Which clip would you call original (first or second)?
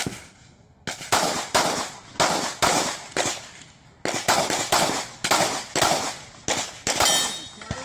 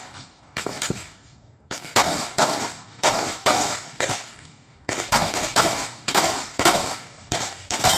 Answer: first